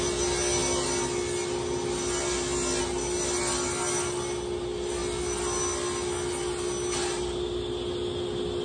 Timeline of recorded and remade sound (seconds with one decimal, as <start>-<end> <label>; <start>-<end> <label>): 0.0-8.6 recorded